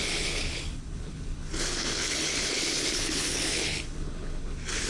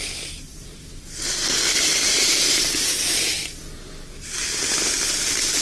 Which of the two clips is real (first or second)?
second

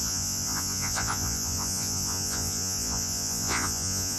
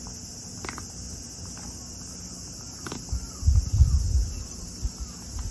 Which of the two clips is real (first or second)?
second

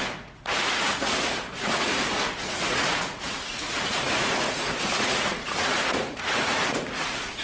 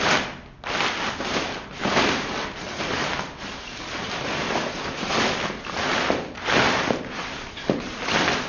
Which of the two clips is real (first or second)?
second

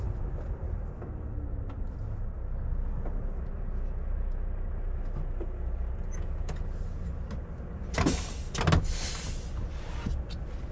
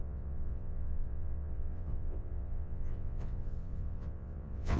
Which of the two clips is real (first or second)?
first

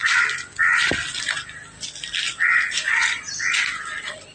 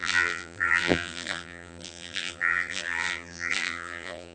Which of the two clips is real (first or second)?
first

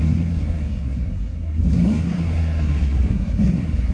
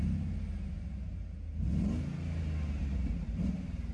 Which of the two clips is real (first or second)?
second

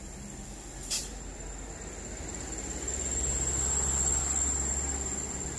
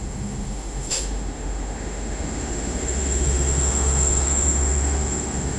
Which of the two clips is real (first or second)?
first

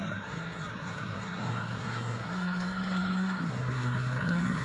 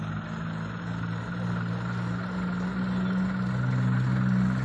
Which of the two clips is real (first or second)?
second